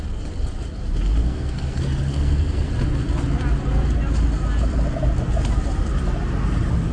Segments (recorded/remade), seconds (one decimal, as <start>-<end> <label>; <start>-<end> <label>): 0.0-1.2 recorded; 1.2-2.7 remade; 2.7-6.9 recorded